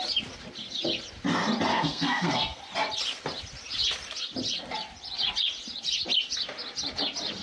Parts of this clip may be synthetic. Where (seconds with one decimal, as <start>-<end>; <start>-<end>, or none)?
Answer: 1.7-2.6